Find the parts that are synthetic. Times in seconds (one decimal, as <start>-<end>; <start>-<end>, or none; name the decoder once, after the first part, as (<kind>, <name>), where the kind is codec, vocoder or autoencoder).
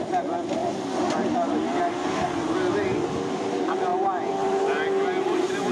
none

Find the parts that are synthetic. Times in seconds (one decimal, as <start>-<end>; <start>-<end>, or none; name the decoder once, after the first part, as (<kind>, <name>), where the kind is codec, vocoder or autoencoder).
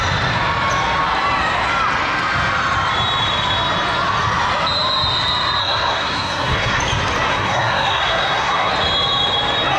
5.6-6.8 (codec, SNAC); 7.3-8.7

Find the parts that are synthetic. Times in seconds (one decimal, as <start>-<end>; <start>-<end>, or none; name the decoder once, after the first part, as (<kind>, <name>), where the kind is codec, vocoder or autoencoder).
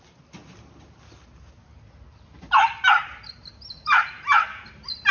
none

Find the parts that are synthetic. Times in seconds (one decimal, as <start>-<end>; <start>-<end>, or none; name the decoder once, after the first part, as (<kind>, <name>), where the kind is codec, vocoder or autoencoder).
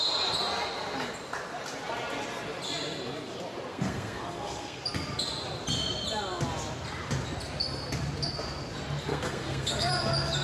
3.7-4.8 (codec, SNAC); 9.1-9.9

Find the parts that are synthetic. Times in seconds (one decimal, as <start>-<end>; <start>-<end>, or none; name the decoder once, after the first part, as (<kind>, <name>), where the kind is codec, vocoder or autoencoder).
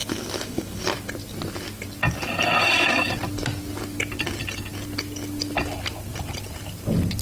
0.0-0.8 (autoencoder, DAC-VAE); 2.6-3.1